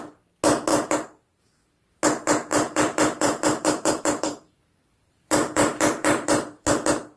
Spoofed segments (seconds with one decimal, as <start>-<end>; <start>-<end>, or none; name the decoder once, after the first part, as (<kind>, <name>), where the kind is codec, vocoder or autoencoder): 0.7-1.4 (vocoder, BigVGAN v2); 2.5-6.7

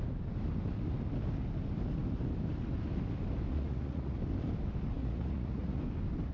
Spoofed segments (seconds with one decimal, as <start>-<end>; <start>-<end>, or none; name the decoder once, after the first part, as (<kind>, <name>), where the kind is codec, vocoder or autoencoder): 3.5-4.2 (vocoder, Vocos); 5.0-5.8

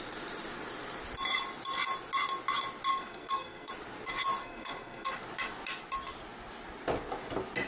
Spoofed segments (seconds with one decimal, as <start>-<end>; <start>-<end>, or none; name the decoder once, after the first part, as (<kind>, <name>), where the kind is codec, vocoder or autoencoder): 2.9-3.7 (codec, SNAC); 4.4-5.1

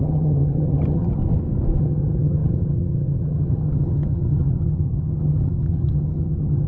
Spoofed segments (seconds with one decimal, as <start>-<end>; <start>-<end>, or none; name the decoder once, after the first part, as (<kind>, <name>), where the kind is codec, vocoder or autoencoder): 0.0-1.2 (vocoder, HiFi-GAN); 1.8-6.7

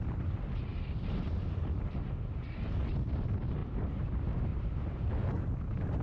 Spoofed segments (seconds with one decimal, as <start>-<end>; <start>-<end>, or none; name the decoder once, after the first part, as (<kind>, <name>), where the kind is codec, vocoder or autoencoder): 3.6-4.1 (vocoder, BigVGAN v2); 4.5-5.1

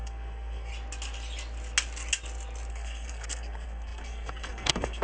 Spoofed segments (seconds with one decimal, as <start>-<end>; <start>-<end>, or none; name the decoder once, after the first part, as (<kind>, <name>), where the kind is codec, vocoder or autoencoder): 0.0-0.7 (codec, SNAC); 2.7-5.0

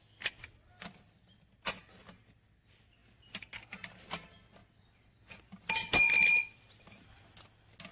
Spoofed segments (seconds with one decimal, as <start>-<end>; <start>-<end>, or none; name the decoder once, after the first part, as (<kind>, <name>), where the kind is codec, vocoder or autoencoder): 3.0-4.1 (vocoder, BigVGAN v2); 4.6-6.7

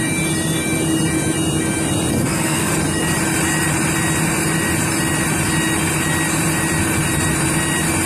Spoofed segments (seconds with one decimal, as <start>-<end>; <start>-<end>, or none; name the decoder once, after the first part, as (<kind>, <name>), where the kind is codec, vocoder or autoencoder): 2.2-2.7 (codec, SNAC)